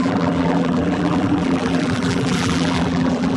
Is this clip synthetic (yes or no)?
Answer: yes